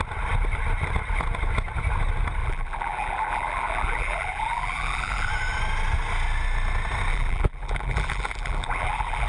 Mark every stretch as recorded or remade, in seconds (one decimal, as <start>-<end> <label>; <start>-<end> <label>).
0.0-2.4 recorded; 2.4-5.3 remade; 5.3-7.1 recorded; 7.1-9.3 remade